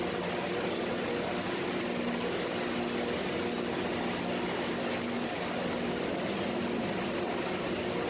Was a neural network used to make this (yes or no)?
no